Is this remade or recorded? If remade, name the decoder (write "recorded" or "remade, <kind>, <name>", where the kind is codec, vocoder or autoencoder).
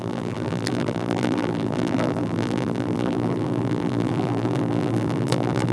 remade, vocoder, BigVGAN v2